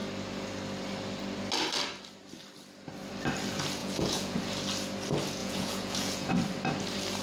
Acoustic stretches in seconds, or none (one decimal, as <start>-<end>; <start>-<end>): 0.0-3.8; 4.4-5.4; 6.3-7.2